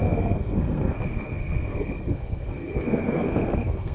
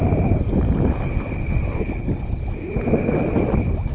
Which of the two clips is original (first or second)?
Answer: second